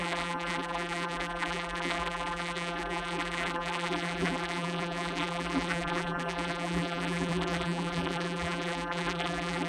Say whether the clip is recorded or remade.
remade